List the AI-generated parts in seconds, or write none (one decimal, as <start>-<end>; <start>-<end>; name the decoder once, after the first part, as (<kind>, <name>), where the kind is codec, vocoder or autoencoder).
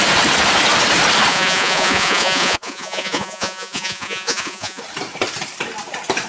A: 1.3-4.8 (vocoder, Vocos)